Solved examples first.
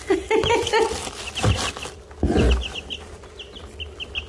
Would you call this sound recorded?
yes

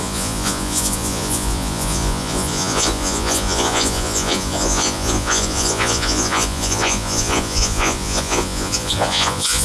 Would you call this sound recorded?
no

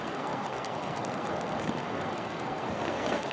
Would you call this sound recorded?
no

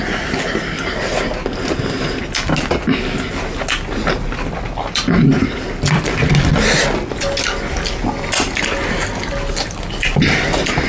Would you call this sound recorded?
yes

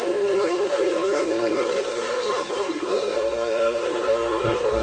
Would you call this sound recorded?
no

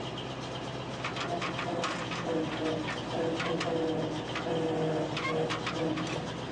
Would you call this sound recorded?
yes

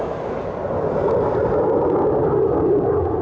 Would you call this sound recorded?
yes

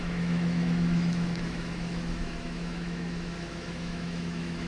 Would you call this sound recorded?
no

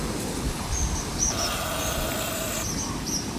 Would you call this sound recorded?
yes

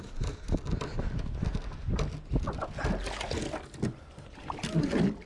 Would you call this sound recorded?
yes